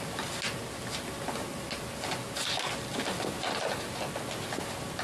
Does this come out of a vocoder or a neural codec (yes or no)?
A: no